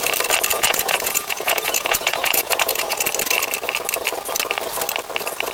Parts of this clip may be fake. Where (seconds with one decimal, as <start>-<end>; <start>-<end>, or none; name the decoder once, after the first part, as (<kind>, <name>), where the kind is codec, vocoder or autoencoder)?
0.5-3.0 (vocoder, Vocos)